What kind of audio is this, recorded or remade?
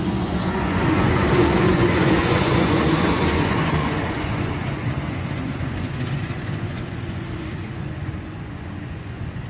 remade